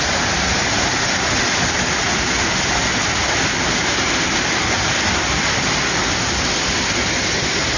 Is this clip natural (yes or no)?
yes